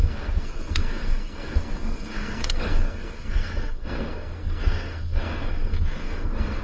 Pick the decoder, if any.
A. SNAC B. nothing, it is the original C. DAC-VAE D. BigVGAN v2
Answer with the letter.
A